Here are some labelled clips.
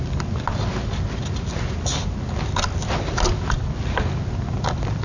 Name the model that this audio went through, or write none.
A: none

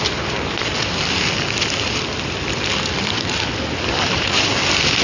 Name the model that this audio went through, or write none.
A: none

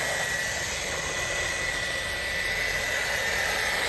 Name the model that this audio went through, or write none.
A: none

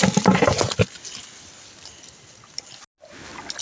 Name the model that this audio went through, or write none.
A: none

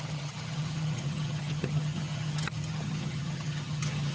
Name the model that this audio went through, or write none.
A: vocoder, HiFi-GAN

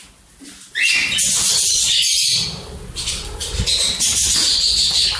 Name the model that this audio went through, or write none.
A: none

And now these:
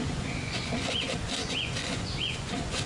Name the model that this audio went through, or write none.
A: vocoder, Vocos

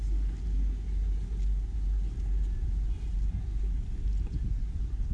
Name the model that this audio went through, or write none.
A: none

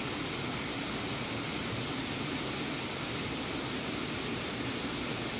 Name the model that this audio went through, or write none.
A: none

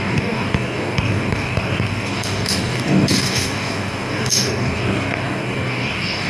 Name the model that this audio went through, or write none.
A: codec, DAC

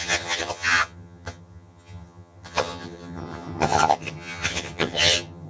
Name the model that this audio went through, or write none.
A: vocoder, HiFi-GAN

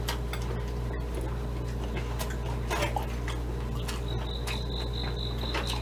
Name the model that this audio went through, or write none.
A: none